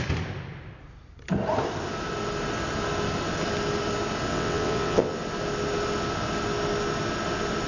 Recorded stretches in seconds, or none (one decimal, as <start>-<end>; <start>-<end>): 0.0-4.3; 5.2-7.7